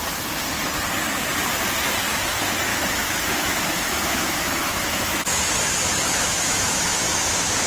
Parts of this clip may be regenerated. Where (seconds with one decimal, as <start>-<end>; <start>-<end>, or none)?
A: 2.7-7.3